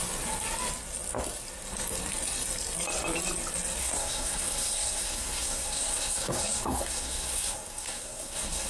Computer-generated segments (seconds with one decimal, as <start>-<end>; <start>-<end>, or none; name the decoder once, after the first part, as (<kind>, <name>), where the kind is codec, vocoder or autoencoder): 3.8-8.7 (codec, SNAC)